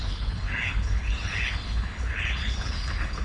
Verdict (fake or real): fake